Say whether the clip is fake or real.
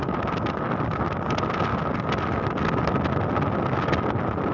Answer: real